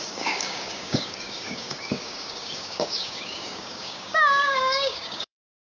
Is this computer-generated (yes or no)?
yes